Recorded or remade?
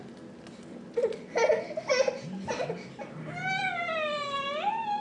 recorded